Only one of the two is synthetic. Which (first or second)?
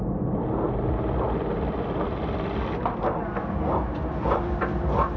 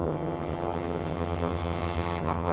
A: second